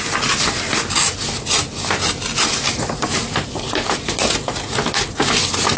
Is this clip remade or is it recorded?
recorded